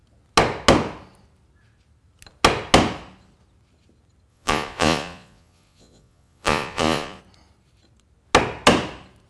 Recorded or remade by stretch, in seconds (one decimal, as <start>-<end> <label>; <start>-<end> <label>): 0.0-4.3 recorded; 4.3-7.2 remade; 7.2-9.3 recorded